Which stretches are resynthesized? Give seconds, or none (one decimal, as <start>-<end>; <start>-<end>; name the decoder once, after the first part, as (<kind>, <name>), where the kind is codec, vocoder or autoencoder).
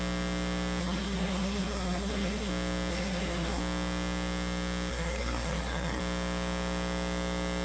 0.8-2.5 (codec, SNAC); 2.9-3.6; 4.9-6.0